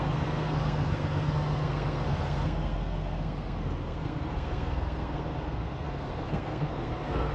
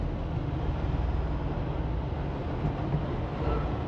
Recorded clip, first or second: second